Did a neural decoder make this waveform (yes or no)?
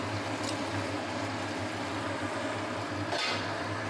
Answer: no